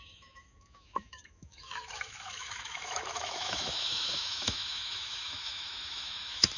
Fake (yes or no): yes